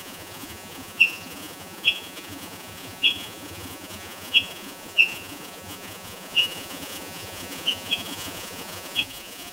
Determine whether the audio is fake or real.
fake